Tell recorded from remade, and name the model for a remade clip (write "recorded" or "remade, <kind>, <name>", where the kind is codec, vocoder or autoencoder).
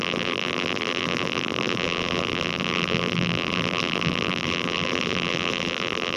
remade, vocoder, BigVGAN v2